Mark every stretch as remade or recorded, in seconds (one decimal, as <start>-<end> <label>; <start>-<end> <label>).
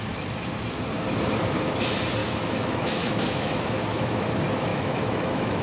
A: 0.0-2.2 recorded; 2.2-4.3 remade; 4.3-4.7 recorded; 4.7-5.6 remade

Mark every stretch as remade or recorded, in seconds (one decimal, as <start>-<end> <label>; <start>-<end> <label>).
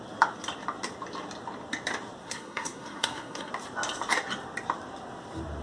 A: 0.0-2.2 recorded; 2.2-3.5 remade; 3.5-5.6 recorded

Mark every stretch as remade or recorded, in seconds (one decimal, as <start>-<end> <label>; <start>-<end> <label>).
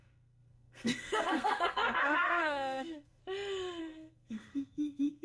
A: 0.0-3.2 remade; 3.2-3.8 recorded; 3.8-5.2 remade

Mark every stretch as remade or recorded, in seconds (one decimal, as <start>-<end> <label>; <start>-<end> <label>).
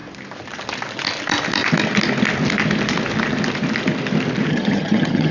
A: 0.0-4.5 recorded; 4.5-5.3 remade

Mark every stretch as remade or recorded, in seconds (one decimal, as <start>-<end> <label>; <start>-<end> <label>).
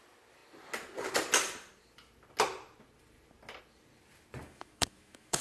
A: 0.0-4.4 recorded; 4.4-5.4 remade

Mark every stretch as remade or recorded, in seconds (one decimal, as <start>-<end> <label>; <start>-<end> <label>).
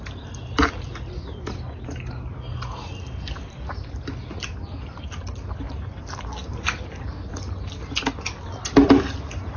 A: 0.0-9.6 recorded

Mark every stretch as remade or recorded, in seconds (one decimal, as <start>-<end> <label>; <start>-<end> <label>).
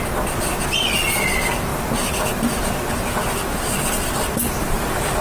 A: 0.0-5.2 recorded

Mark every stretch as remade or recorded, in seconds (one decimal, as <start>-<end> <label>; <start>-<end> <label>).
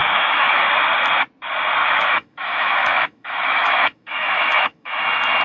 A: 0.0-0.6 remade; 0.6-1.8 recorded; 1.8-5.0 remade; 5.0-5.4 recorded